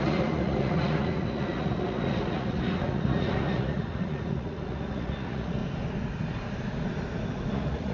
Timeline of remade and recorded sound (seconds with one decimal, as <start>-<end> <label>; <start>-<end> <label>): 0.0-5.6 remade; 5.6-7.5 recorded; 7.5-7.9 remade